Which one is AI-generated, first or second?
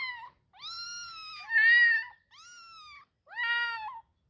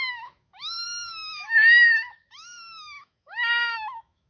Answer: second